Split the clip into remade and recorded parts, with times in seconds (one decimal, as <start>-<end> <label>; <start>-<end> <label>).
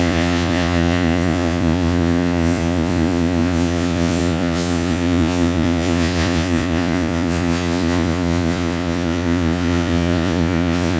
0.0-11.0 remade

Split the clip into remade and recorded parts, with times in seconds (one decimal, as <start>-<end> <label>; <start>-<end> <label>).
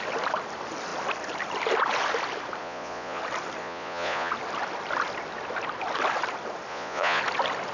0.0-2.6 recorded; 2.6-3.2 remade; 3.2-3.6 recorded; 3.6-4.3 remade; 4.3-6.7 recorded; 6.7-7.2 remade; 7.2-7.7 recorded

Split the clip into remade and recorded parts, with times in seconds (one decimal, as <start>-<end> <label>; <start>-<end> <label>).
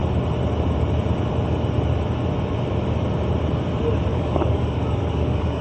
0.0-4.1 recorded; 4.1-5.6 remade